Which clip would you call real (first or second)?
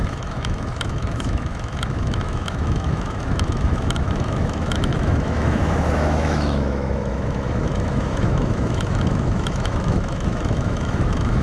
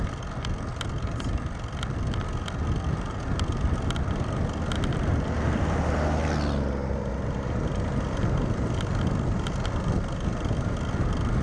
second